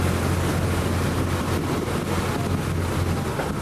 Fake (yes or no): no